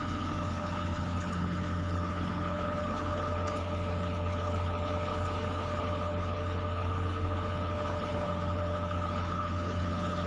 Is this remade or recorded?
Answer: remade